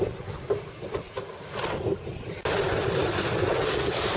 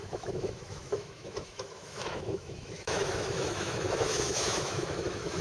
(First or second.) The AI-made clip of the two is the second